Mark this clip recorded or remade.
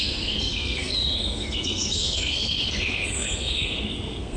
remade